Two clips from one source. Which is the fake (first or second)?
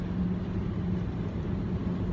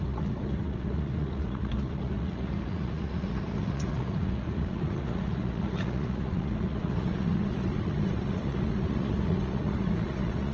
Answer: second